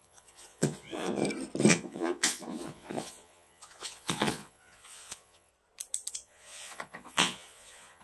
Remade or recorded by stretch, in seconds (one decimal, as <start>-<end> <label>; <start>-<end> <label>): 0.0-1.2 remade; 1.2-1.7 recorded; 1.7-5.5 remade; 5.5-6.1 recorded; 6.1-8.0 remade